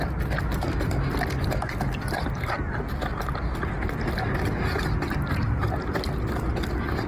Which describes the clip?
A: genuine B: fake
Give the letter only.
A